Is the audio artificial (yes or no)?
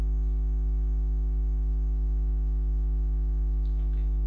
yes